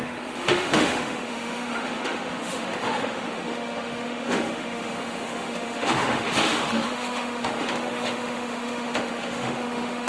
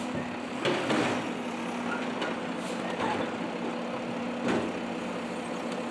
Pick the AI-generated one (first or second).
first